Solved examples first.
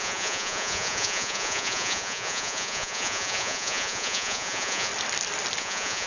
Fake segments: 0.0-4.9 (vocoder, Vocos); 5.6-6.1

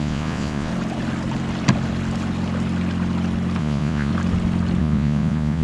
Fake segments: 0.0-0.7 (vocoder, Vocos); 3.6-4.1; 4.8-5.6

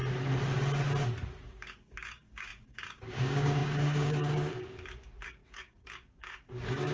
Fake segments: 1.5-6.9 (codec, DAC)